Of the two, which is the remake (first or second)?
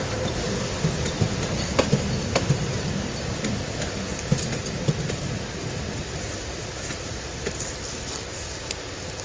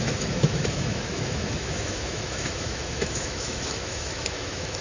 second